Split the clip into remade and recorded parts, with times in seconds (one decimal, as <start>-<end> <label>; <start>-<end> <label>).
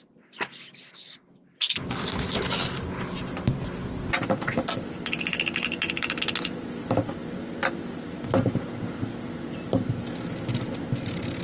0.0-11.4 recorded